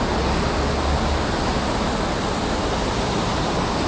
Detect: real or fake real